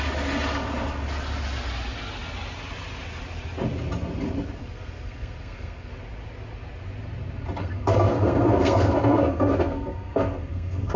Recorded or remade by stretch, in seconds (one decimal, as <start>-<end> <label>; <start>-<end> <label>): 0.0-4.6 recorded; 4.6-5.9 remade; 5.9-7.6 recorded; 7.6-11.0 remade